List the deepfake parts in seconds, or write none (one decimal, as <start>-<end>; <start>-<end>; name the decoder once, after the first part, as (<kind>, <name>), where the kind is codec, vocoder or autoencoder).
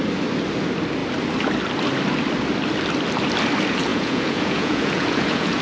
3.9-5.6 (vocoder, Vocos)